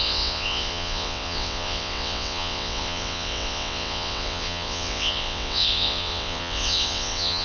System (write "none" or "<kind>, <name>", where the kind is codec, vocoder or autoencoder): vocoder, WaveNeXt